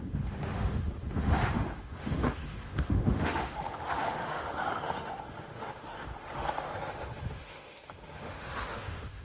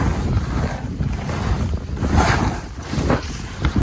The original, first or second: second